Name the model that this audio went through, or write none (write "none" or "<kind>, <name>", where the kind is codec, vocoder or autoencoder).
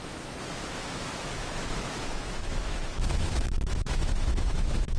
autoencoder, DAC-VAE